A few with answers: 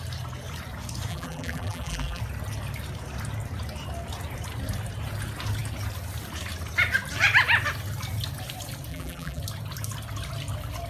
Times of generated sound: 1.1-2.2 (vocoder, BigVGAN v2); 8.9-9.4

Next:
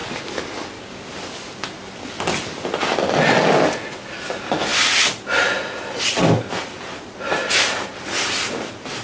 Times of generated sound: none

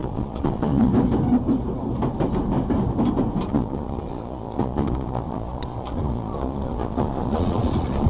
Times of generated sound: 0.0-0.9 (vocoder, Vocos); 3.5-8.1